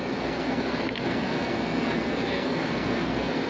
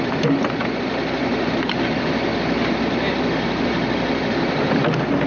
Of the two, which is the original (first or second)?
second